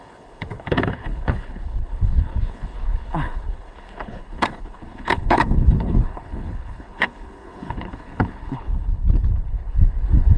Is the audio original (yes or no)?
no